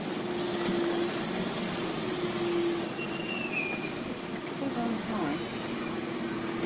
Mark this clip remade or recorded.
recorded